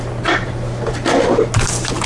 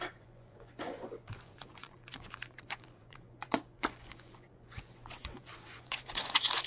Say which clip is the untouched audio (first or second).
first